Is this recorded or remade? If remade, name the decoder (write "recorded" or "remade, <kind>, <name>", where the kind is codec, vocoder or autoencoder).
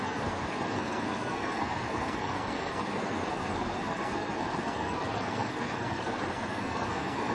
remade, codec, SNAC